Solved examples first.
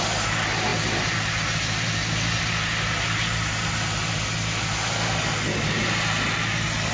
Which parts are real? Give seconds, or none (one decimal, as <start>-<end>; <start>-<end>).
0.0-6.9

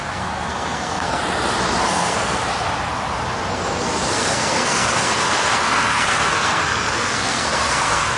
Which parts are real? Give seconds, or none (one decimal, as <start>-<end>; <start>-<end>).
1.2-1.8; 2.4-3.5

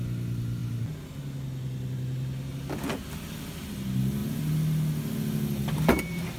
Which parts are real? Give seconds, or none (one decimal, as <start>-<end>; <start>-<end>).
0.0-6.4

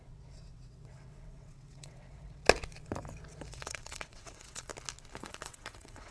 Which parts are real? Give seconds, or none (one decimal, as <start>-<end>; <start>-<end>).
2.4-3.5; 4.7-5.2